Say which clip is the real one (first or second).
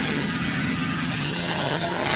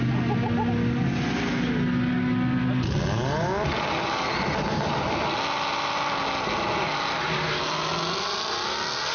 second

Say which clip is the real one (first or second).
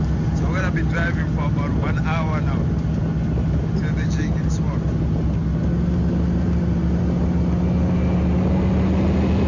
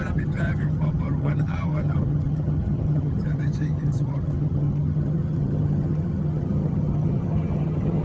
first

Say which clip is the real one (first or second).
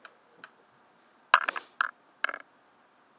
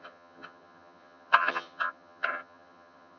first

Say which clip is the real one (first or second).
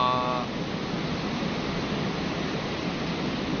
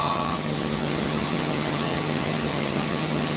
first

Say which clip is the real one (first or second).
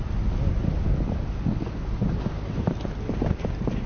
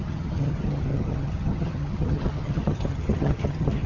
first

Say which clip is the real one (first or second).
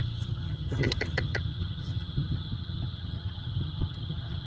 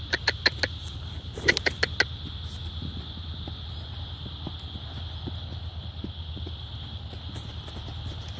second